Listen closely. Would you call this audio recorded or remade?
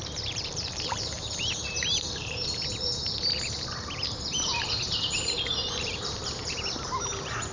remade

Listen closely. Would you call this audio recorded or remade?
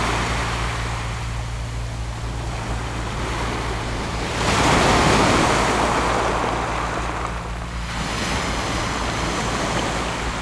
recorded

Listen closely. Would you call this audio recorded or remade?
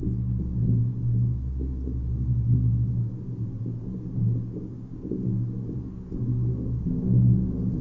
recorded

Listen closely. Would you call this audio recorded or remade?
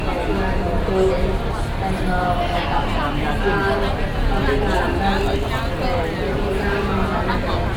recorded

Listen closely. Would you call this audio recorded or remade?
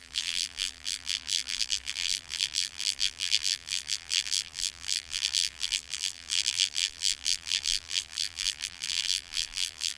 remade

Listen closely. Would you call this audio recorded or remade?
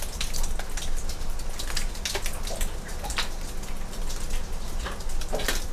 recorded